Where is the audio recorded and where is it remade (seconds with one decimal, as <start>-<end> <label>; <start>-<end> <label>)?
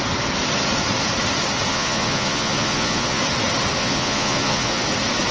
0.0-1.7 recorded; 1.7-3.2 remade; 3.2-3.8 recorded; 3.8-4.8 remade; 4.8-5.3 recorded